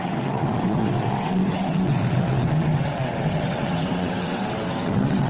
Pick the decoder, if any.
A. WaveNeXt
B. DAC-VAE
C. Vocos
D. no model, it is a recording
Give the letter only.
A